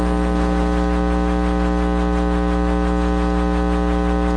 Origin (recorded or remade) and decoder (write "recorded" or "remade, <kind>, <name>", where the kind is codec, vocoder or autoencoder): recorded